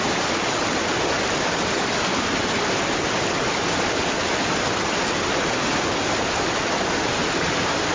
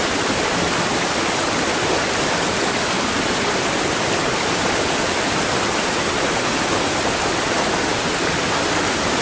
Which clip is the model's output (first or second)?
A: second